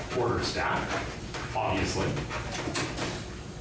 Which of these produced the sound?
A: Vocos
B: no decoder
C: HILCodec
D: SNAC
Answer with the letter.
B